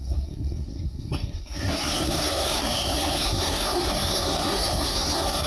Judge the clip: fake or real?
fake